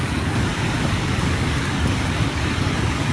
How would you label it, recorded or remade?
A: remade